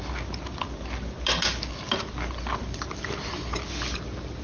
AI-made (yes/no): no